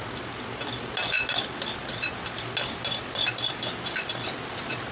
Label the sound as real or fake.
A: real